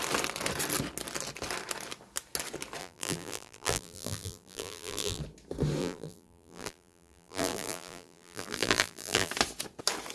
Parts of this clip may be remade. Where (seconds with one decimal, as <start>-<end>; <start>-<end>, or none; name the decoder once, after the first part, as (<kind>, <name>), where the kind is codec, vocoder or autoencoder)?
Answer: 2.8-5.2 (vocoder, BigVGAN v2); 5.8-9.3